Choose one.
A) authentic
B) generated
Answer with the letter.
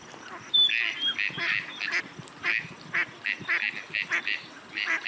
A